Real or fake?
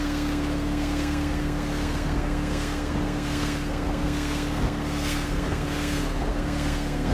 fake